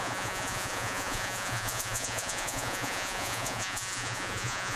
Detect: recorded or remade remade